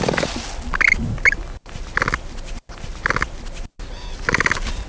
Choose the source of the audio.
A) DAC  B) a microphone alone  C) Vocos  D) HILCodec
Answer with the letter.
B